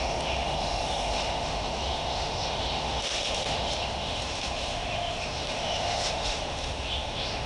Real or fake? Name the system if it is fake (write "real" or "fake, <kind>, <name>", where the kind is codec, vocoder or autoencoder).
fake, autoencoder, DAC-VAE